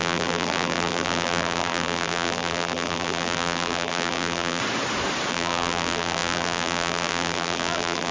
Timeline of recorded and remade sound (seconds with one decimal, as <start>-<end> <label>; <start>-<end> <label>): 0.0-4.6 remade; 4.6-5.3 recorded; 5.3-8.1 remade